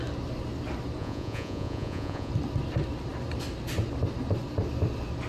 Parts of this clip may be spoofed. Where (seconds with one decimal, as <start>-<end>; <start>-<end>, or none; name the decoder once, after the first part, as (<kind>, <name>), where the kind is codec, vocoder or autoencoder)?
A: 1.0-2.3 (vocoder, Vocos)